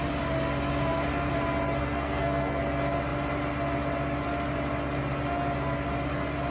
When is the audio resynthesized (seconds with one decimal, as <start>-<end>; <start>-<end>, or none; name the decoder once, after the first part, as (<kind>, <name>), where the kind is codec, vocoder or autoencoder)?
1.8-2.6 (codec, SNAC)